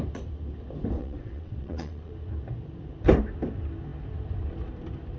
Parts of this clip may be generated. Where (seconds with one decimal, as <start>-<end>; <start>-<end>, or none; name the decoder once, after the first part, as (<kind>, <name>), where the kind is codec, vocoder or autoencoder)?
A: 1.0-2.1 (vocoder, WaveNeXt)